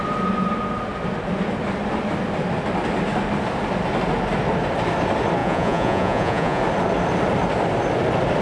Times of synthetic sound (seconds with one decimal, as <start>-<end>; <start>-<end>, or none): 5.4-6.6